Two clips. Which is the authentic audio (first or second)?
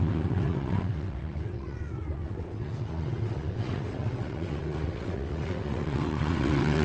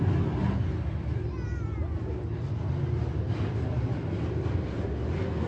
second